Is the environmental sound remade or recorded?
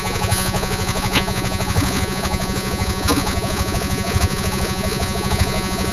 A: remade